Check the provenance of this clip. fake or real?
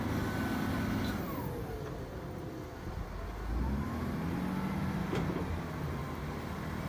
real